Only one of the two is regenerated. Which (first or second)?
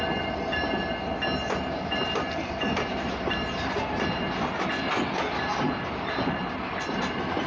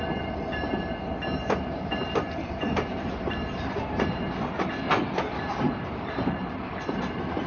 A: second